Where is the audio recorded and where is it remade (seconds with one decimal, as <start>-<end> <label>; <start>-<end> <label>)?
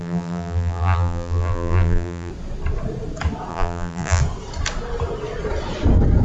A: 0.0-2.3 remade; 2.3-3.5 recorded; 3.5-4.2 remade; 4.2-6.2 recorded